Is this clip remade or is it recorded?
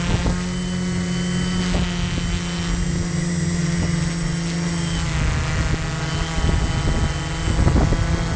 recorded